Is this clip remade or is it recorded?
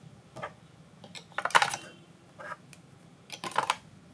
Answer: remade